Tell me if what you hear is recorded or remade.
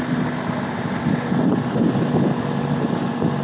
recorded